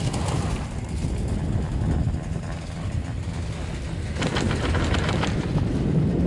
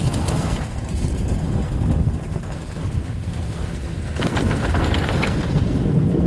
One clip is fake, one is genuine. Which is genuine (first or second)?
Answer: first